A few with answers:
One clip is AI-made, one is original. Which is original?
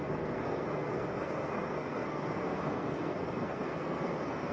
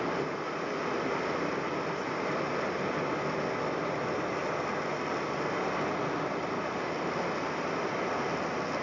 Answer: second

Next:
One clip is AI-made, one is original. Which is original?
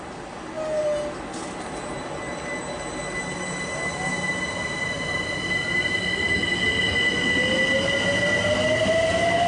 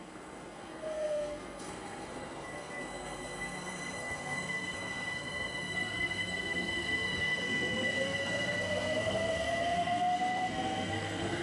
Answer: first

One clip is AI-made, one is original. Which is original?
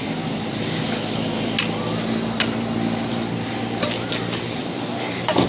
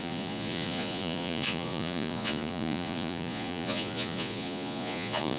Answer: first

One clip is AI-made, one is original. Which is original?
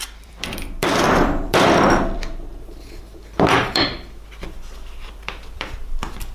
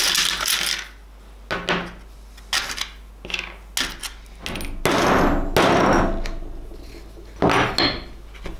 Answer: second